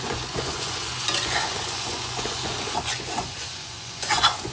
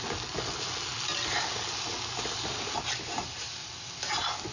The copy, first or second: first